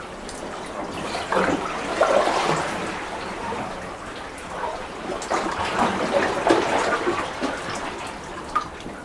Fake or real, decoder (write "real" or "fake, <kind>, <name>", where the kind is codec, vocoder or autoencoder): real